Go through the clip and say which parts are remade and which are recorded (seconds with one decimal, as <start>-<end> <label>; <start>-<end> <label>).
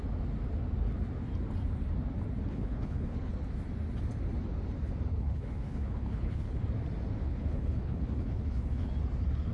0.0-2.5 recorded; 2.5-3.3 remade; 3.3-5.1 recorded; 5.1-6.6 remade; 6.6-7.2 recorded; 7.2-8.9 remade; 8.9-9.5 recorded